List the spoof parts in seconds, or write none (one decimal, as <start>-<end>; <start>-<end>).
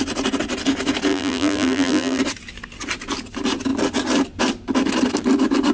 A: 1.1-2.2